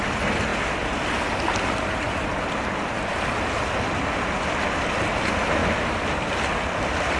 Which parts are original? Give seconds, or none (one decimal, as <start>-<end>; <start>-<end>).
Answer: 0.0-7.2